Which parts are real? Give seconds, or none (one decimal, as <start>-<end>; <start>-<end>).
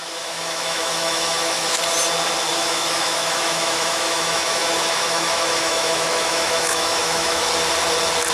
1.8-2.5; 7.5-8.3